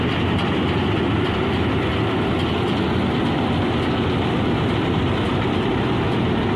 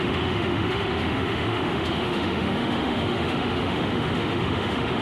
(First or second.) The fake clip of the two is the second